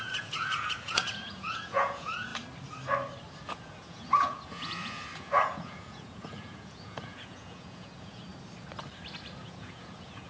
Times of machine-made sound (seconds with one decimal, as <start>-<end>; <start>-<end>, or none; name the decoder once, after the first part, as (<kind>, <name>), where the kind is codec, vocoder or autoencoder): 0.0-2.3 (vocoder, Vocos); 3.5-8.3; 9.4-10.3

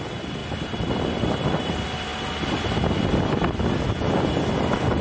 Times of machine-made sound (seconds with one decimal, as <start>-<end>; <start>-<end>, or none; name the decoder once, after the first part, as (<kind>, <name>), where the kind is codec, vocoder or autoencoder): none

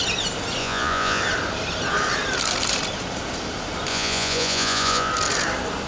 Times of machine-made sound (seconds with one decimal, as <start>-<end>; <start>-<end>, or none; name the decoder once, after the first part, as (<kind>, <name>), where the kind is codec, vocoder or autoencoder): 0.6-1.2 (vocoder, Vocos); 3.9-5.1

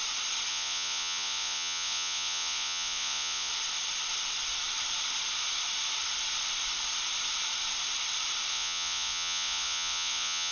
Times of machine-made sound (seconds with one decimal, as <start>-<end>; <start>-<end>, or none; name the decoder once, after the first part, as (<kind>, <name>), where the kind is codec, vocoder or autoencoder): 0.5-3.5 (vocoder, Vocos); 8.5-10.5

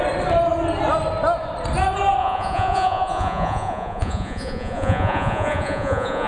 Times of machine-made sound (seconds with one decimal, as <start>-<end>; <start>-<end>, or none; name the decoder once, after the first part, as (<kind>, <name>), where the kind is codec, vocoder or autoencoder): 2.2-6.3 (vocoder, Vocos)

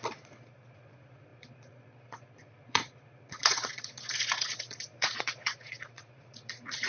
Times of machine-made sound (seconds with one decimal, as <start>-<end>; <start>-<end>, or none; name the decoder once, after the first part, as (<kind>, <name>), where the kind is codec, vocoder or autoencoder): 0.0-6.9 (vocoder, Vocos)

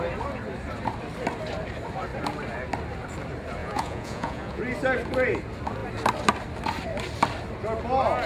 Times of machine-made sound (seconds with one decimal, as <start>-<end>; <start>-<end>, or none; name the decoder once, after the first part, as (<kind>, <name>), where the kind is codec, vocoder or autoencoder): 3.6-4.6 (vocoder, Vocos)

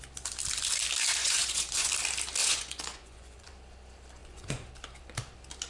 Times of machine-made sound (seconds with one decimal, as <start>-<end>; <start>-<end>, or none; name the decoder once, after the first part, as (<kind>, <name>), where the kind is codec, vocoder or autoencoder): 1.2-1.9 (vocoder, Vocos); 2.4-3.5; 4.2-4.7